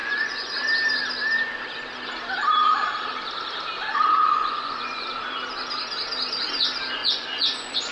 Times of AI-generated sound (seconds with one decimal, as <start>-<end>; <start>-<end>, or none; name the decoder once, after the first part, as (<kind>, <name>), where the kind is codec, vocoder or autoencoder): 0.0-0.5 (vocoder, Vocos); 4.2-5.1; 7.0-7.9